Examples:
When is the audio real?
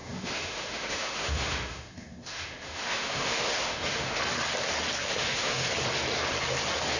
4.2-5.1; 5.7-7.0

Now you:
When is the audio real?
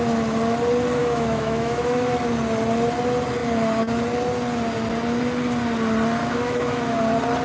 0.0-1.0; 2.1-6.2; 7.0-7.4